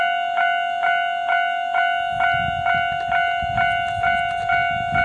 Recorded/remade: recorded